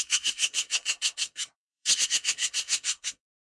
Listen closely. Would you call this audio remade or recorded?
remade